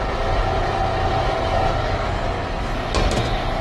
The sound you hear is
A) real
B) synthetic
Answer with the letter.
A